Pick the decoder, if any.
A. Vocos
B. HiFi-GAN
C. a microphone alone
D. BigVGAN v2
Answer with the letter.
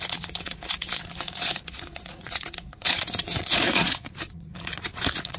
A